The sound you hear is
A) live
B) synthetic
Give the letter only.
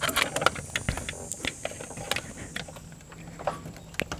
A